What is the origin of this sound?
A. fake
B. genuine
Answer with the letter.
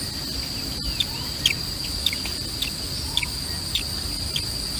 B